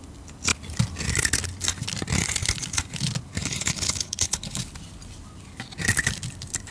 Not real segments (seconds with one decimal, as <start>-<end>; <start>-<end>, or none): 3.4-4.6